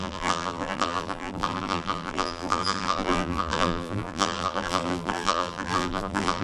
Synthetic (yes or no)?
yes